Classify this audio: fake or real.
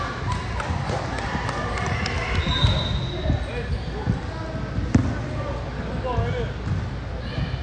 real